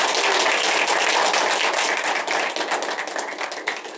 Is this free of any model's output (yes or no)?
yes